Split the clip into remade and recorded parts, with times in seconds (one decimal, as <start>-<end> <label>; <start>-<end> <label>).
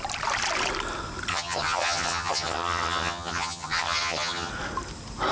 0.0-1.3 recorded; 1.3-4.5 remade; 4.5-5.3 recorded